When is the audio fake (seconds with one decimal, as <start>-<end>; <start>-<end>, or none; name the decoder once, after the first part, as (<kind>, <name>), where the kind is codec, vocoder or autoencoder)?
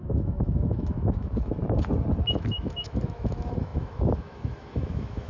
0.0-1.6 (autoencoder, DAC-VAE); 2.3-5.3